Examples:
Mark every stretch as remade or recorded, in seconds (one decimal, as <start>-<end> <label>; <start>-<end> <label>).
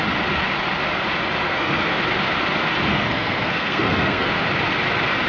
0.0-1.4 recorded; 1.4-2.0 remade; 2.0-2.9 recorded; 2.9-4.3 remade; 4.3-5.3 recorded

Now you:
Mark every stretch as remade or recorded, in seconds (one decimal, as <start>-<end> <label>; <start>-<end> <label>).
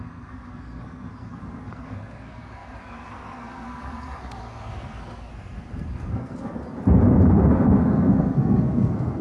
0.0-6.6 remade; 6.6-7.5 recorded; 7.5-9.2 remade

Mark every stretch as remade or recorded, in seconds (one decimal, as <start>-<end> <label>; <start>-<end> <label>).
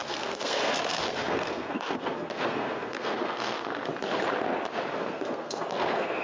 0.0-3.9 remade; 3.9-4.9 recorded; 4.9-6.2 remade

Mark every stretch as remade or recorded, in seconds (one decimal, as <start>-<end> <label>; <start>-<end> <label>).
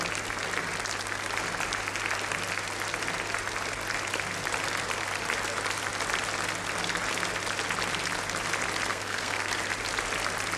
0.0-8.9 recorded; 8.9-9.5 remade; 9.5-10.6 recorded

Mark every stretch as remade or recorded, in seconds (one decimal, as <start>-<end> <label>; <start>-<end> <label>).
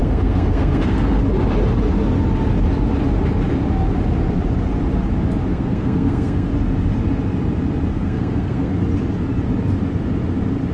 0.0-1.2 remade; 1.2-5.5 recorded; 5.5-6.5 remade; 6.5-7.9 recorded; 7.9-8.7 remade; 8.7-10.7 recorded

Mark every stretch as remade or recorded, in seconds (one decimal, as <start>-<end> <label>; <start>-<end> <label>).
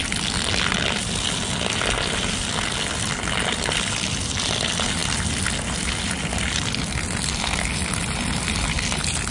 0.0-9.3 recorded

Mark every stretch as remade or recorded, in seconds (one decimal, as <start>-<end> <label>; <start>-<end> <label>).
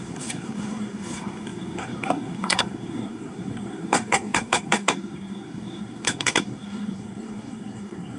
0.0-8.2 remade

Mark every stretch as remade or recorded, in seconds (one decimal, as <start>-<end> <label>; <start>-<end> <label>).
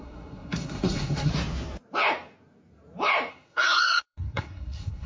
0.0-1.3 remade; 1.3-3.3 recorded; 3.3-5.1 remade